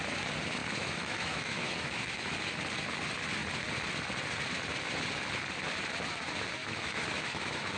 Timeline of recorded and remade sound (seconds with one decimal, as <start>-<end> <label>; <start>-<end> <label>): 0.0-0.6 recorded; 0.6-2.3 remade; 2.3-6.6 recorded; 6.6-7.8 remade